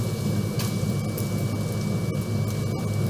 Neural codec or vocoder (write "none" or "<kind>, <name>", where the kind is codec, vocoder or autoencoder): none